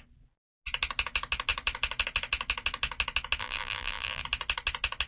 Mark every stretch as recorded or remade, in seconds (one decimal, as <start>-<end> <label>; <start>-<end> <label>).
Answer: 0.0-3.4 recorded; 3.4-4.2 remade; 4.2-5.1 recorded